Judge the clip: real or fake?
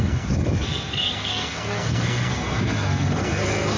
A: fake